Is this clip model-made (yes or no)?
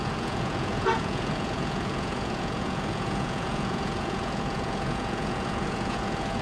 yes